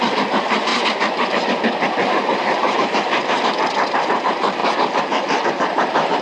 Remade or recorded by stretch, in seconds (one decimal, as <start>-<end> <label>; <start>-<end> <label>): 0.0-0.7 remade; 0.7-1.3 recorded; 1.3-6.2 remade